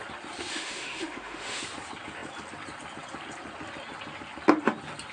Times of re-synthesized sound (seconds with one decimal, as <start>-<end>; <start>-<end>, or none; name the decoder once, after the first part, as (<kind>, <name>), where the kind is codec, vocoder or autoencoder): 0.5-1.6 (autoencoder, DAC-VAE)